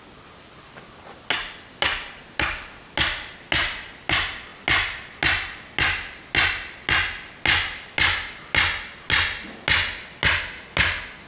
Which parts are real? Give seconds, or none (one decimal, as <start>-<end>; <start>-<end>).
0.0-11.3